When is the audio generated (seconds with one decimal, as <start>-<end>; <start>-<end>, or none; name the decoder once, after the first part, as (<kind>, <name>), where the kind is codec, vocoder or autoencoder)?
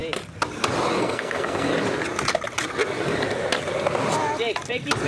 1.0-1.7 (codec, SNAC)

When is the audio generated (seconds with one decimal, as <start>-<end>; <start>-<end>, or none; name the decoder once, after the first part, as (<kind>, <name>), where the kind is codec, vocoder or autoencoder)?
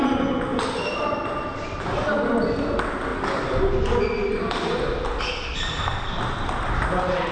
none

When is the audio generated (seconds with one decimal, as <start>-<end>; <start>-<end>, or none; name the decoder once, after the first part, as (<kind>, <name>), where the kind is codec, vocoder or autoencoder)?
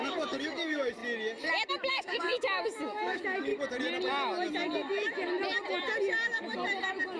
0.0-1.0 (autoencoder, DAC-VAE); 1.7-3.5